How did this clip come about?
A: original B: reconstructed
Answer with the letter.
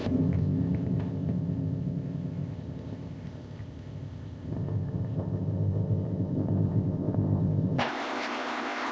B